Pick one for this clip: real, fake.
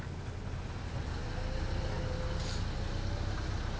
real